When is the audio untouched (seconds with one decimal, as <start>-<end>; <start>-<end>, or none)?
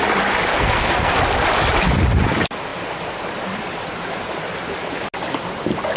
0.0-0.5; 1.2-6.0